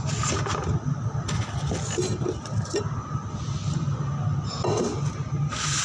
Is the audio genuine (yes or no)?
yes